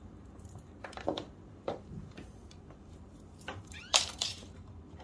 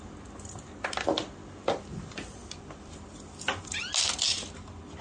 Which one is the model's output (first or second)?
first